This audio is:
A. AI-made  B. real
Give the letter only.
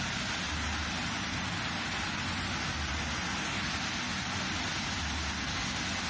B